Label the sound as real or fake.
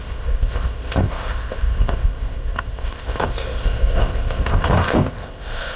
fake